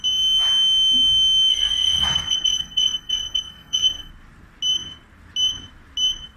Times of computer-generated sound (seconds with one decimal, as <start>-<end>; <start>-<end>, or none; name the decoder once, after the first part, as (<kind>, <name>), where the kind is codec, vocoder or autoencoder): 1.5-4.1 (codec, SNAC)